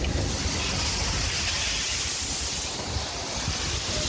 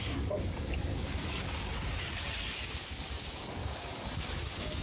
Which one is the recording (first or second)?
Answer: first